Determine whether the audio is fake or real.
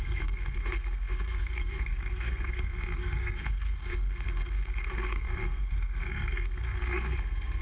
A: fake